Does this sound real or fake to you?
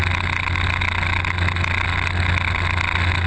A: real